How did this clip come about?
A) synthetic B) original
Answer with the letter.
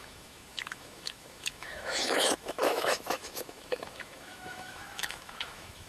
A